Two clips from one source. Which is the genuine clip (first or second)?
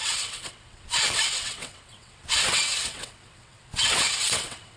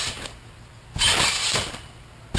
second